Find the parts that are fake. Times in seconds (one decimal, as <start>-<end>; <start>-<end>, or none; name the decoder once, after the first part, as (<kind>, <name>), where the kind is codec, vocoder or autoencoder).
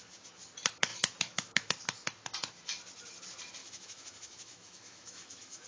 0.9-1.7 (autoencoder, DAC-VAE); 3.6-5.7